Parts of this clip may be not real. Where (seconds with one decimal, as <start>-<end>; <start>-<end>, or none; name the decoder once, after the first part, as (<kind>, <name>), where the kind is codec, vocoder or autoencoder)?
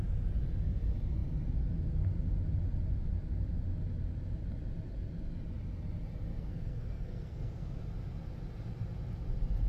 6.3-7.8 (codec, SNAC)